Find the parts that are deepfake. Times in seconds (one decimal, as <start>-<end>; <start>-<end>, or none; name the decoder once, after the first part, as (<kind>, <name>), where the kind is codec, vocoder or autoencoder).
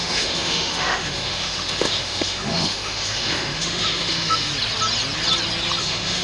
0.0-4.5 (autoencoder, DAC-VAE); 5.8-6.2